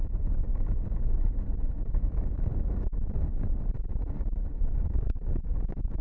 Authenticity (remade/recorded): recorded